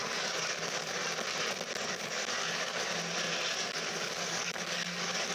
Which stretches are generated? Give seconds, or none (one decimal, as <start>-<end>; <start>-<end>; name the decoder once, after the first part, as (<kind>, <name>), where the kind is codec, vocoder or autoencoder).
0.0-1.0 (codec, DAC); 1.9-2.9; 3.6-5.3